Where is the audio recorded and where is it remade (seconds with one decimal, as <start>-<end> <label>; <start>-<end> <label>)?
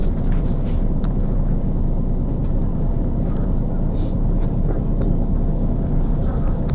0.0-1.6 remade; 1.6-2.4 recorded; 2.4-6.7 remade